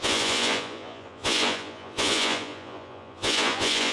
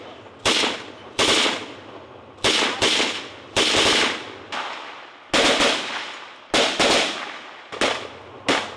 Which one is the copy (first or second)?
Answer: first